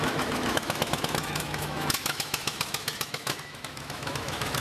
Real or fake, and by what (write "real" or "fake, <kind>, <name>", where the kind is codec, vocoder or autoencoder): fake, autoencoder, DAC-VAE